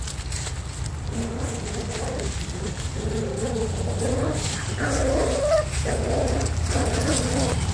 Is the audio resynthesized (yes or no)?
no